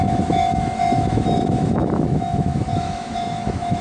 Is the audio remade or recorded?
remade